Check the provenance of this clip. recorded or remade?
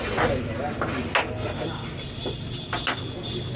recorded